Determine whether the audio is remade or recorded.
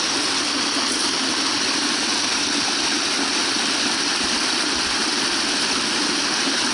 recorded